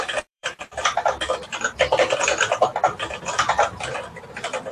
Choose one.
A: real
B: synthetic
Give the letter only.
B